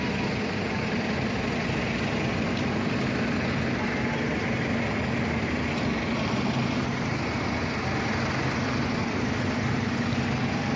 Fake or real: real